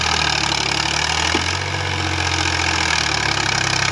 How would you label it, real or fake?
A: real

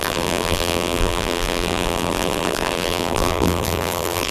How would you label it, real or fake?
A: fake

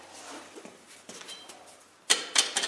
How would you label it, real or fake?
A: fake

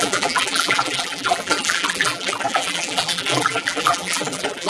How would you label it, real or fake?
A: fake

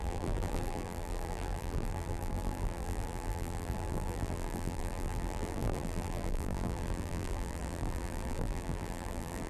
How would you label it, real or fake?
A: fake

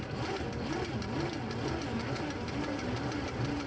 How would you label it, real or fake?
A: real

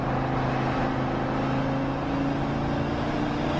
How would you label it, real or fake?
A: real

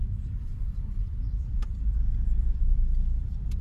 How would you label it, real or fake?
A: fake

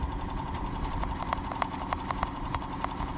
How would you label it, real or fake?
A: real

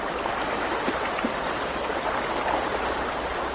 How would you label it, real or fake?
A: fake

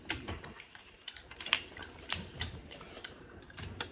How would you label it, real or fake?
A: fake